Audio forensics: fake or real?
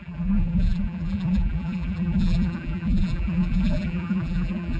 fake